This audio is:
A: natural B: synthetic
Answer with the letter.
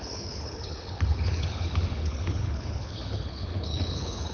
B